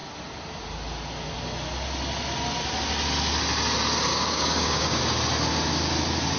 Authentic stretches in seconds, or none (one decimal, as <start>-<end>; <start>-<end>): 0.0-4.1; 5.0-6.4